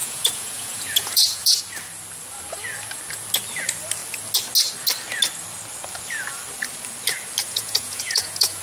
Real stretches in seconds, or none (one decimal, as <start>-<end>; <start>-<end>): 1.6-7.4